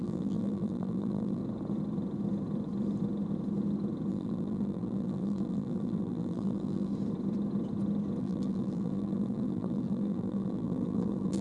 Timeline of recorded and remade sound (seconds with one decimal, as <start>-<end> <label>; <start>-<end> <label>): 0.0-1.4 remade; 1.4-4.1 recorded; 4.1-6.9 remade; 6.9-8.2 recorded; 8.2-11.4 remade